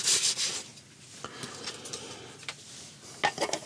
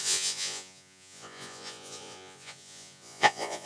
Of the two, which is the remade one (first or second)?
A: second